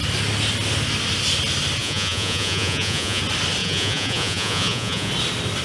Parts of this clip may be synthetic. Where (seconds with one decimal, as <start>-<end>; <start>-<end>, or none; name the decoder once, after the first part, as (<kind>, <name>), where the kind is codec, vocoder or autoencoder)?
1.8-3.2 (vocoder, Vocos); 3.6-5.1